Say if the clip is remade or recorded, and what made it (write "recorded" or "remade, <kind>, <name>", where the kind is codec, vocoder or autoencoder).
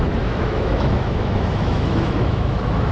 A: remade, autoencoder, DAC-VAE